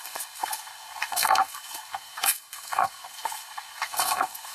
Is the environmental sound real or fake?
fake